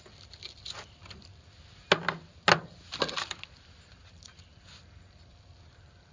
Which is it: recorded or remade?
recorded